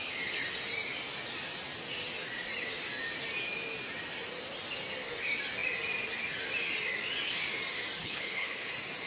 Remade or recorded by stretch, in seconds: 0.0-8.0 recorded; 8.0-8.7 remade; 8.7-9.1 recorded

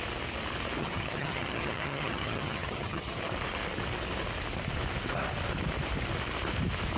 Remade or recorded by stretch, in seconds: 0.0-0.8 recorded; 0.8-3.2 remade; 3.2-7.0 recorded

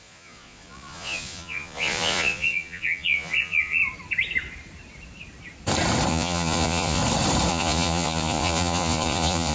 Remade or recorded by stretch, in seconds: 0.0-3.8 remade; 3.8-6.1 recorded; 6.1-7.0 remade; 7.0-7.5 recorded; 7.5-9.5 remade

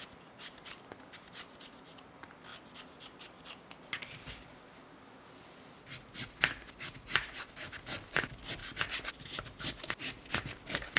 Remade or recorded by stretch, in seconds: 0.0-11.0 recorded